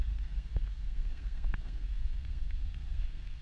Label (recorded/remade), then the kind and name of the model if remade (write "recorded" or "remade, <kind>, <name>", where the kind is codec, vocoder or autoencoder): remade, codec, SNAC